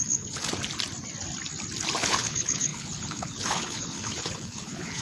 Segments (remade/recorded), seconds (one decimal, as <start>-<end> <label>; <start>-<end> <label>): 0.0-0.5 remade; 0.5-2.0 recorded; 2.0-5.0 remade